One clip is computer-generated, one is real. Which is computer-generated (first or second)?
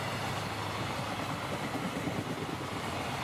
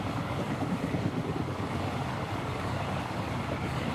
second